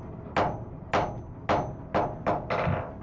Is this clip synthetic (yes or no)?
no